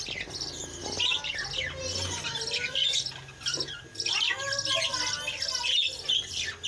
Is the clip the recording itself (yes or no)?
yes